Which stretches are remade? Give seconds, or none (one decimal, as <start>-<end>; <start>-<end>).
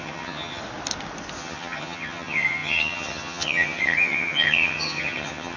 0.0-0.6; 1.4-5.6